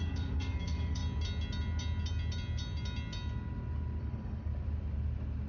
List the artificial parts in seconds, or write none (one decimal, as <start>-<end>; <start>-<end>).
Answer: 0.0-1.0; 4.0-4.5